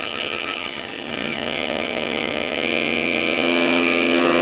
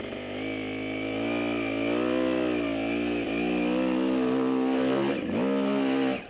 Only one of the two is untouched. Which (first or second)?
second